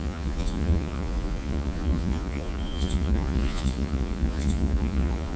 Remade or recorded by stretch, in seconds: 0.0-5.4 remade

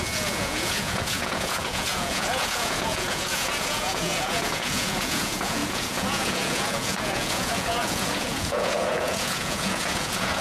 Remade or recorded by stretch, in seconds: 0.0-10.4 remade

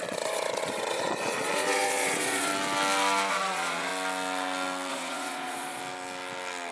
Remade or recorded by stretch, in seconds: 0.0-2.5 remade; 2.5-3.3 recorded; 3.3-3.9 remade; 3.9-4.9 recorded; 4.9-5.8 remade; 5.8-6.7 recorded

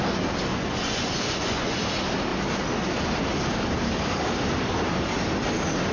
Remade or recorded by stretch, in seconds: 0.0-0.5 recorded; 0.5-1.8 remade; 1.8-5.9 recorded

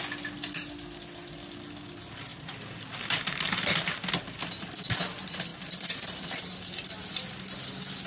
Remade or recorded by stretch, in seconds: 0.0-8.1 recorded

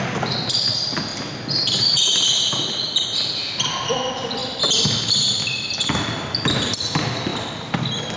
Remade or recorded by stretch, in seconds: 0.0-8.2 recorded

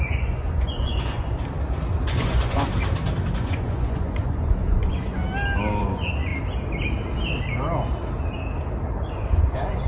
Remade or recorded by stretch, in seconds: 0.0-1.4 remade; 1.4-2.0 recorded; 2.0-2.7 remade; 2.7-3.3 recorded; 3.3-5.2 remade; 5.2-5.8 recorded; 5.8-6.3 remade; 6.3-9.1 recorded; 9.1-9.9 remade